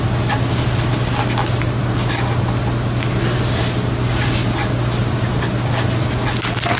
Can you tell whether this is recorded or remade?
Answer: recorded